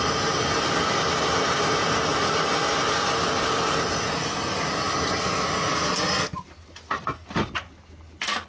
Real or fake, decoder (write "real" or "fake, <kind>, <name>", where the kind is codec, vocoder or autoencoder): real